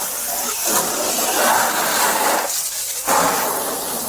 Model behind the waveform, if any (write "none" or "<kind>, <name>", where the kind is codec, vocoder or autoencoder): none